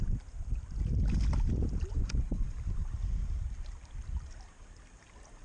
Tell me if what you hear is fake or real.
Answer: real